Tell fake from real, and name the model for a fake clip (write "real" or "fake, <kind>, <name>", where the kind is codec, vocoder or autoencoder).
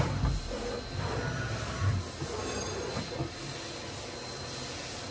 real